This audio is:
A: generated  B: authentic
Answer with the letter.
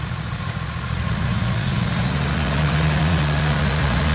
A